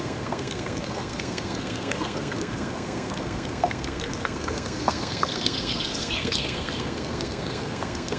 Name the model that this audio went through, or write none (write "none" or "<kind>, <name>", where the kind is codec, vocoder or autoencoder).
codec, SNAC